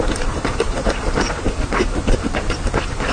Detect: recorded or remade recorded